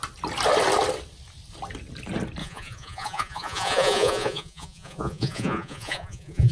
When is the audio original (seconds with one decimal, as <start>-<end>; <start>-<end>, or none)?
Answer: 0.0-2.4